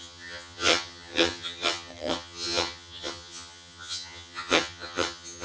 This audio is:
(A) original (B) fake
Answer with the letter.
B